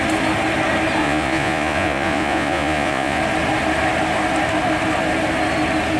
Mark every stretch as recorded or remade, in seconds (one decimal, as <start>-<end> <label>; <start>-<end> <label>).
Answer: 0.0-1.0 recorded; 1.0-3.2 remade; 3.2-6.0 recorded